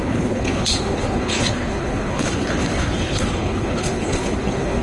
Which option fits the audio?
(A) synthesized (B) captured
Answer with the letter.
A